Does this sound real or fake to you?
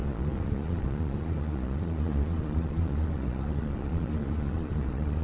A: fake